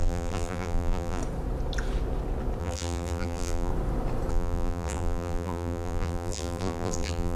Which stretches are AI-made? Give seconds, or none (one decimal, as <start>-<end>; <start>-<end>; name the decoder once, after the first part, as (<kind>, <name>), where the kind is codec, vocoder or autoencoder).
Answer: 0.0-1.2 (vocoder, BigVGAN v2); 2.6-3.7; 4.3-7.4